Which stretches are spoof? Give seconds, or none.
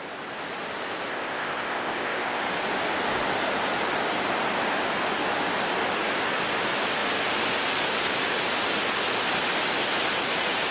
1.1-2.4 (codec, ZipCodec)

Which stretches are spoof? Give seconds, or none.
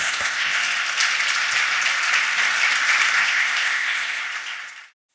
0.0-0.6 (codec, ZipCodec); 3.2-4.2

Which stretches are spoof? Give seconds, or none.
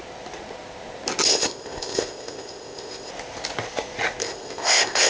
1.3-3.1 (codec, ZipCodec); 4.2-5.1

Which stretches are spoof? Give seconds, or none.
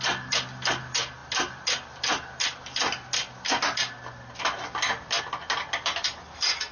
none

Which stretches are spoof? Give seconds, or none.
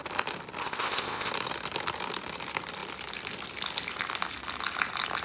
0.6-1.3 (codec, ZipCodec)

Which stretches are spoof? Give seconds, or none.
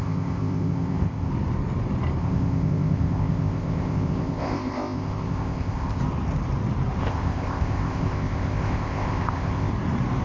0.0-1.3 (codec, ZipCodec); 2.2-6.0; 7.0-9.7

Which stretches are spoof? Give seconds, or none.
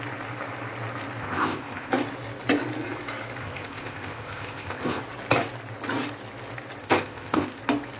1.2-1.9 (codec, ZipCodec); 3.4-5.0; 6.8-7.6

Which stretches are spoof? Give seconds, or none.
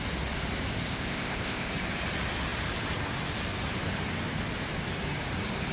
0.9-1.7 (codec, ZipCodec)